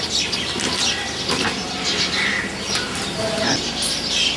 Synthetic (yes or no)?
no